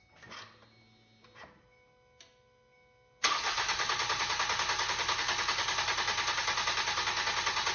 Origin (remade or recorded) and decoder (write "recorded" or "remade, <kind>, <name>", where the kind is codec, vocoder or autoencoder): recorded